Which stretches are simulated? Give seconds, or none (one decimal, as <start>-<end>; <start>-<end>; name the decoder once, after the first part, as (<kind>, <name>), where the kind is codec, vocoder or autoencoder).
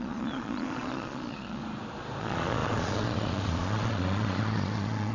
0.0-1.6 (vocoder, Vocos); 2.2-5.1